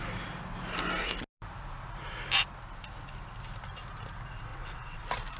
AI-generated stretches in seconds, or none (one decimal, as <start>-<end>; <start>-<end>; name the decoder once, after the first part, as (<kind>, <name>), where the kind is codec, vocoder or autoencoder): 4.5-5.0 (vocoder, WaveNeXt)